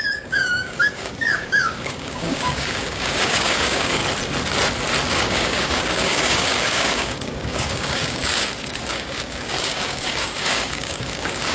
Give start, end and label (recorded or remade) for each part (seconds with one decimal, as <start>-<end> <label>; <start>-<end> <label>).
0.0-4.0 remade; 4.0-5.1 recorded; 5.1-11.5 remade